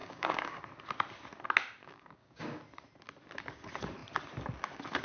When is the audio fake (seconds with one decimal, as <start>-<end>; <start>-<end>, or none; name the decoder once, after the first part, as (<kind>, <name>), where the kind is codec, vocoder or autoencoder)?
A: 0.0-0.6 (codec, DAC); 1.8-2.6